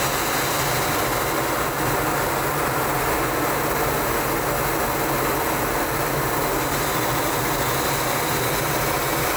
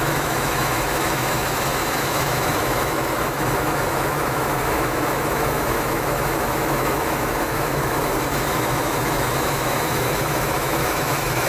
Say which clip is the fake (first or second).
second